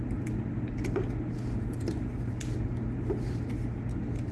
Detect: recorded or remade recorded